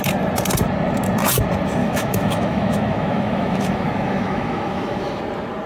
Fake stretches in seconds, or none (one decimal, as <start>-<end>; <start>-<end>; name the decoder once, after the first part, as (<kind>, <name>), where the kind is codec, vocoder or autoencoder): 1.8-5.2 (autoencoder, DAC-VAE)